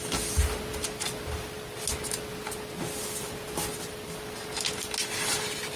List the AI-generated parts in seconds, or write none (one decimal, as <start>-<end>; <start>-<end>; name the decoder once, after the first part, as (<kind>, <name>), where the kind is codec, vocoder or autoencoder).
none